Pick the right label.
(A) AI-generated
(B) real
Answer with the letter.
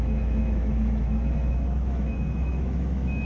A